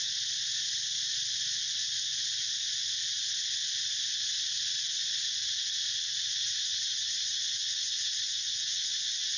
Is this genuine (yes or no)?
yes